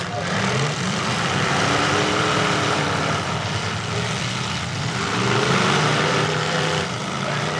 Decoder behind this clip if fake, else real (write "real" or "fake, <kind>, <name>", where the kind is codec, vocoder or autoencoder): fake, vocoder, BigVGAN v2